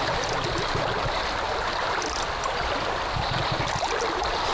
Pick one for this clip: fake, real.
real